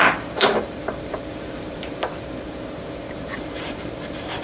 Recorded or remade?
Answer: remade